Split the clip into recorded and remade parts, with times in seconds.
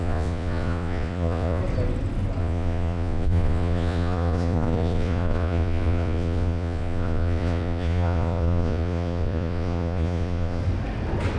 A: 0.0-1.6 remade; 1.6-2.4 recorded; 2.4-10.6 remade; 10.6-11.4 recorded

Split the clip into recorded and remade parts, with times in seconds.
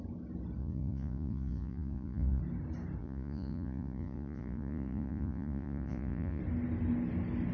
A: 0.0-0.6 recorded; 0.6-2.4 remade; 2.4-3.0 recorded; 3.0-6.4 remade; 6.4-7.5 recorded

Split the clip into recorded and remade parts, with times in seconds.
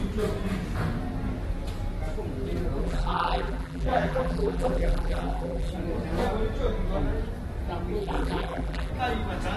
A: 0.0-2.8 recorded; 2.8-5.7 remade; 5.7-8.0 recorded; 8.0-8.9 remade; 8.9-9.6 recorded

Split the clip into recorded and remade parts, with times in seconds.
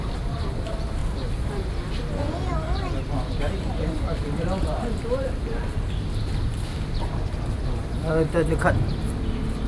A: 0.0-1.0 remade; 1.0-3.5 recorded; 3.5-9.7 remade